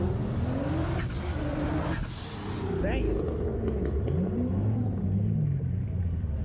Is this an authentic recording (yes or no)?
yes